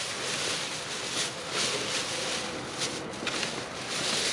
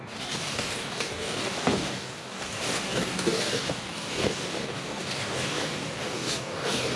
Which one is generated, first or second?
second